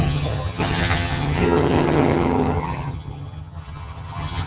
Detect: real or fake fake